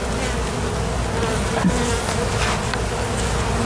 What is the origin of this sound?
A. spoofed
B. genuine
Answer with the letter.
B